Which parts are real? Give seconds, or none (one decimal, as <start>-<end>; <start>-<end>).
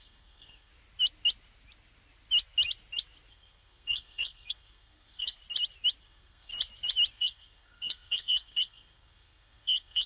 0.7-3.3; 5.4-6.0; 6.5-7.1